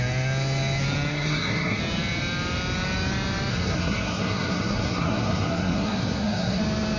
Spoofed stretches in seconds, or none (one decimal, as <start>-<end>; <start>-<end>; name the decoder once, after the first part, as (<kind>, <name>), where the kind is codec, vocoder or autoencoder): 1.1-1.8 (codec, SNAC); 3.5-6.6